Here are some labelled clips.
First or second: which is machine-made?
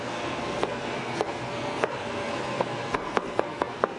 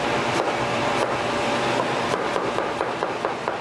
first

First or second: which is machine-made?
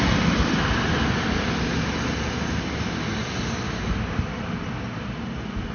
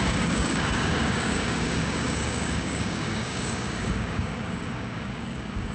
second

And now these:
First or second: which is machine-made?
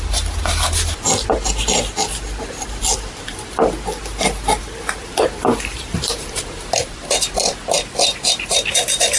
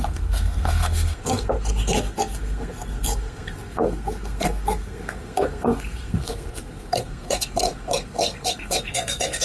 second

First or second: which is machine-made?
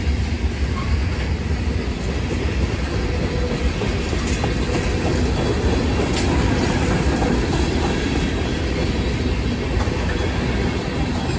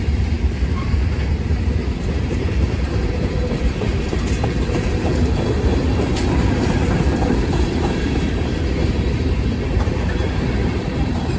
second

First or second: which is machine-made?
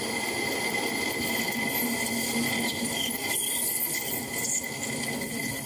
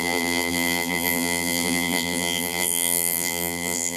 second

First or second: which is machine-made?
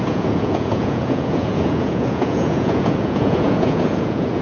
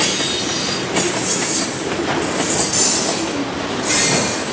first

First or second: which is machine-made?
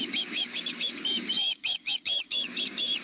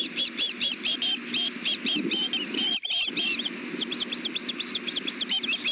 first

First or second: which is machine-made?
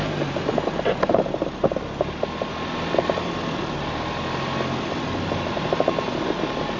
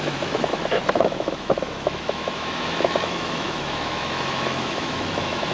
second